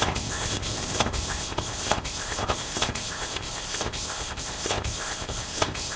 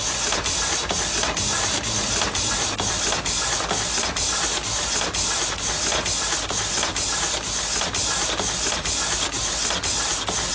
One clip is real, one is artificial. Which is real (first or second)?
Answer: second